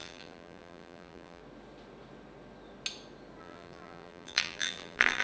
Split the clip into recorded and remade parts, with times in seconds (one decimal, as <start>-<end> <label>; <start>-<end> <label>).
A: 0.0-1.4 remade; 1.4-3.4 recorded; 3.4-5.2 remade